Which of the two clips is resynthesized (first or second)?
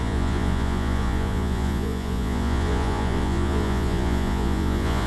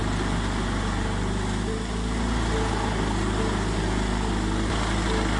first